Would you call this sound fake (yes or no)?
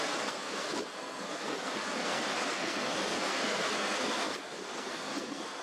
yes